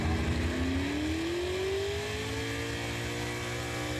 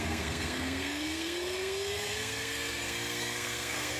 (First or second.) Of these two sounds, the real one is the first